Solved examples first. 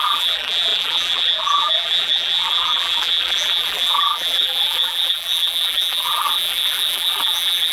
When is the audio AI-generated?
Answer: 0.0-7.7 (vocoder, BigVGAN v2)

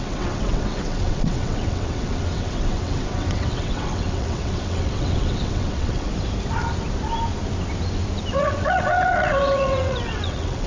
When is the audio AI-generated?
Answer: 0.0-6.1 (vocoder, WaveNeXt); 8.3-10.7

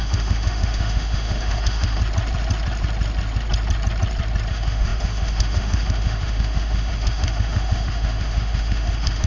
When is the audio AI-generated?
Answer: 0.0-2.0 (autoencoder, DAC-VAE); 4.5-9.3

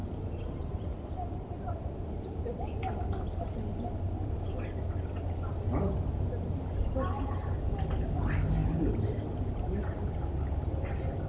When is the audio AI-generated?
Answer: 0.0-2.8 (vocoder, BigVGAN v2)

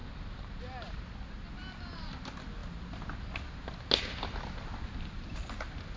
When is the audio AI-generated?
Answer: none

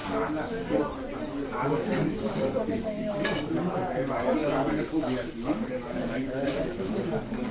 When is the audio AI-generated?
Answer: 0.0-0.8 (codec, DAC); 1.5-3.1; 4.4-7.5